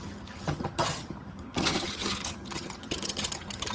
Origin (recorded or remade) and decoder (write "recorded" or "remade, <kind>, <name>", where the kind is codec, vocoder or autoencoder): remade, vocoder, HiFi-GAN